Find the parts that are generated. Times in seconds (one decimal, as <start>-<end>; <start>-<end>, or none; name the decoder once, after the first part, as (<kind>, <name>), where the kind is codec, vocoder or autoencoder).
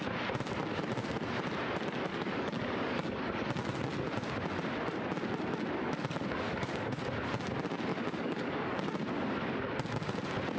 2.1-3.5 (codec, DAC); 5.8-7.0; 7.9-8.8